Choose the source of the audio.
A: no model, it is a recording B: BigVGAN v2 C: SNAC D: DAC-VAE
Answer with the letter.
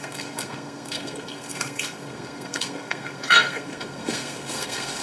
C